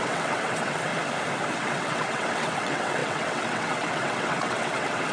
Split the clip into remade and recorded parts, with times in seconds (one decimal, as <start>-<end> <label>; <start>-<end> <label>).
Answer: 0.0-0.9 remade; 0.9-1.6 recorded; 1.6-5.1 remade